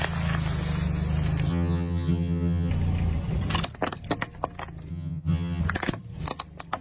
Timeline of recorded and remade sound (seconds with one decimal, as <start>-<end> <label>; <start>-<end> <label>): 0.0-1.5 recorded; 1.5-2.7 remade; 2.7-4.9 recorded; 4.9-5.6 remade; 5.6-6.8 recorded